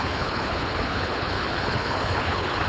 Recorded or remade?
remade